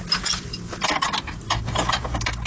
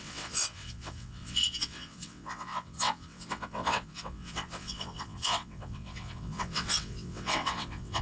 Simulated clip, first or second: second